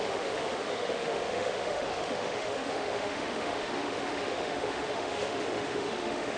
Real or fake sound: fake